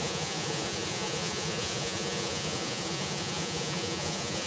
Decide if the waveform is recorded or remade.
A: remade